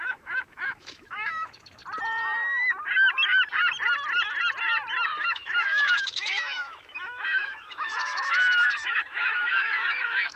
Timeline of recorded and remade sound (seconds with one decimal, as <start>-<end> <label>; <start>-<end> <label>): 0.0-1.8 remade; 1.8-5.2 recorded; 5.2-10.4 remade